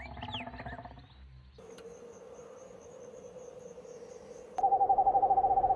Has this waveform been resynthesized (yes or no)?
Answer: no